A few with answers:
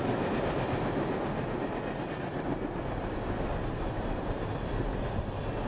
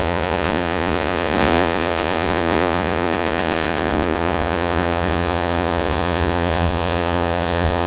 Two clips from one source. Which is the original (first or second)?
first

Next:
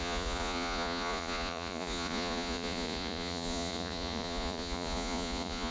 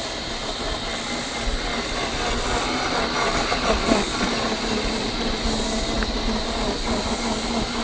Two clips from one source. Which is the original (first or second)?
second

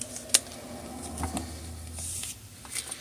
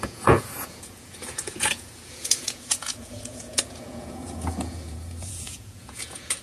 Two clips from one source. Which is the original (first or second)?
first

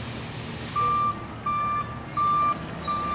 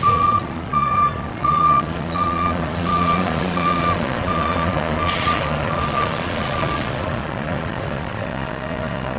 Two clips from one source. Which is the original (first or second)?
first